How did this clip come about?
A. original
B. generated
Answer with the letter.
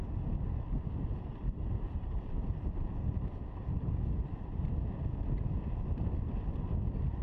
A